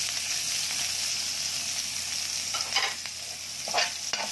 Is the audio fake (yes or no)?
no